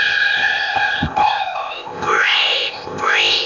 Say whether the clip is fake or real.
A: fake